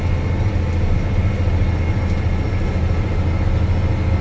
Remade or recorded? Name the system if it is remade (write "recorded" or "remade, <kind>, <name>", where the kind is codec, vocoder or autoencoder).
recorded